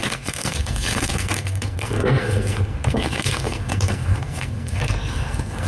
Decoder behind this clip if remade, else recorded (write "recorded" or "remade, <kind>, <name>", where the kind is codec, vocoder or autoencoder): remade, codec, SNAC